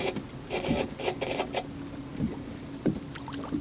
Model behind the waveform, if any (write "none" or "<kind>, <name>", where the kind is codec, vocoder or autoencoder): none